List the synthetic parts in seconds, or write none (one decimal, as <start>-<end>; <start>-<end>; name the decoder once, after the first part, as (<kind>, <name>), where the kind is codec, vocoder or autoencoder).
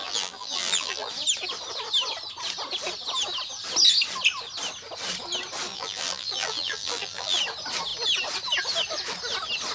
0.0-1.1 (vocoder, BigVGAN v2); 5.7-7.4